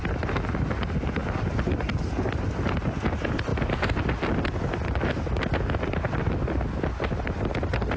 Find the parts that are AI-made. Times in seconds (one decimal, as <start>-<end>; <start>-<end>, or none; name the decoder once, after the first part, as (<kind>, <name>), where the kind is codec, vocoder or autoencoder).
none

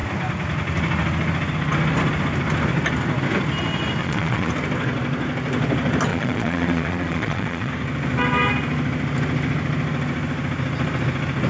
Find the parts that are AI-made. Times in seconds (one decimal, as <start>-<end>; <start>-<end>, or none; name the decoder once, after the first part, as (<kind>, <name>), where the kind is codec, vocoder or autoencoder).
4.0-4.5 (vocoder, Vocos); 6.1-7.7

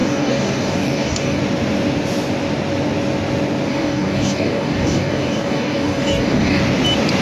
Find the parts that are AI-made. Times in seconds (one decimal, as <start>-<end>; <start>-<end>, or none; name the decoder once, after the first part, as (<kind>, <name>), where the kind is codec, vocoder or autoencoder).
0.0-1.4 (codec, DAC); 3.7-6.6

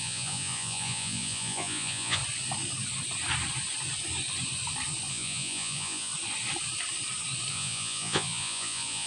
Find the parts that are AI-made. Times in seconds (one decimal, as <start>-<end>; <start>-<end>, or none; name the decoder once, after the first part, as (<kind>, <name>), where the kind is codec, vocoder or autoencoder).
0.0-2.2 (vocoder, Vocos); 5.1-6.1; 7.5-9.1

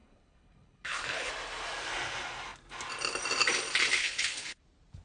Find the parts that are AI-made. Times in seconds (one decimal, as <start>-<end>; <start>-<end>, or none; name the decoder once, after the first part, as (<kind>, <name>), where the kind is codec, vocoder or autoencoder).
0.0-1.3 (codec, HILCodec); 4.0-4.6